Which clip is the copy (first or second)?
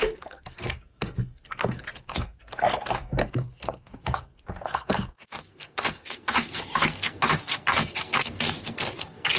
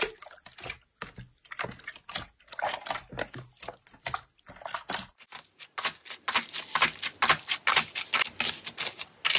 first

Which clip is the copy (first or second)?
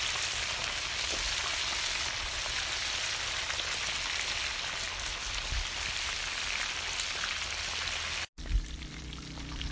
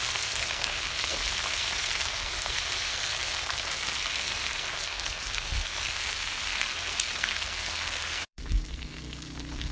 second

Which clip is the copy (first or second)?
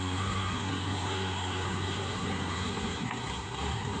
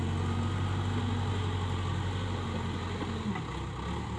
first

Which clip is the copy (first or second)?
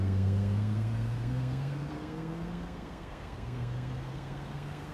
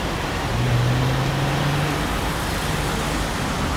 first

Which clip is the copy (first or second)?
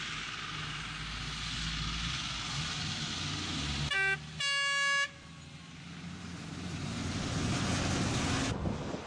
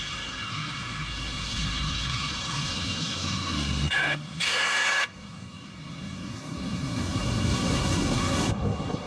second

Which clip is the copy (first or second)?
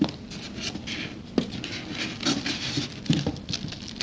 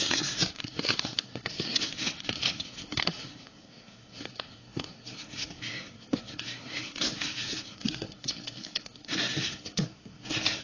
second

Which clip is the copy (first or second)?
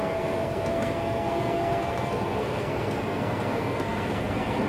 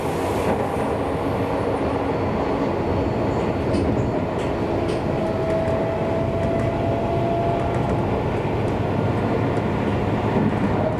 first